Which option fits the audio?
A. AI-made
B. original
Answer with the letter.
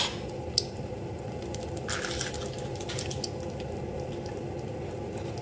B